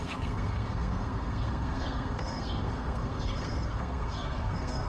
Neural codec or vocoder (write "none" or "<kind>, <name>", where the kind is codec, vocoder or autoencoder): codec, SNAC